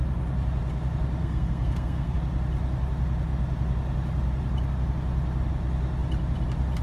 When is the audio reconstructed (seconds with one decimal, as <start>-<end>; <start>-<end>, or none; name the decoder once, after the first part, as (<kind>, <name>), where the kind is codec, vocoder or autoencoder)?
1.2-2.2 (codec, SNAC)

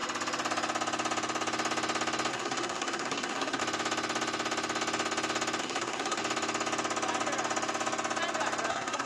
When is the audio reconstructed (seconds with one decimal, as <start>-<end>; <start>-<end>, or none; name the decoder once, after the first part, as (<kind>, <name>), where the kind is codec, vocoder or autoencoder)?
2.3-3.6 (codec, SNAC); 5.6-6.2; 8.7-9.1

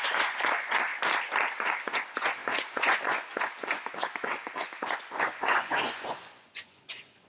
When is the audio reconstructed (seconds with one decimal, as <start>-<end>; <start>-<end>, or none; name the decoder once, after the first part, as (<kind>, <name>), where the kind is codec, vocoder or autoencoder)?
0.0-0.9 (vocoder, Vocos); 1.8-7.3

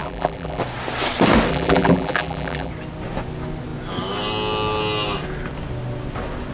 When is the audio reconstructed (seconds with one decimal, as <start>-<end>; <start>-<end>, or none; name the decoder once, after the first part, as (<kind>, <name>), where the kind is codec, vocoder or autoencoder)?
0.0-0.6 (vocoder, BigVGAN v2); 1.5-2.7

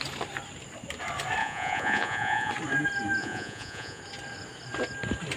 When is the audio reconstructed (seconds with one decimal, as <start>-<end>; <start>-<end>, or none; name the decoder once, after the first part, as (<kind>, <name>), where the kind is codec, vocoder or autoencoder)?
1.4-2.5 (vocoder, Vocos); 3.2-4.0